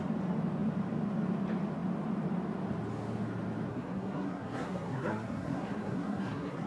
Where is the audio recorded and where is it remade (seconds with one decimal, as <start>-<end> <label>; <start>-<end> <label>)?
0.0-3.7 recorded; 3.7-6.7 remade